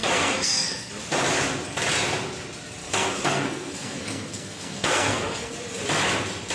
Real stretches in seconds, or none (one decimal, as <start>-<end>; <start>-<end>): 0.9-2.8; 5.5-6.5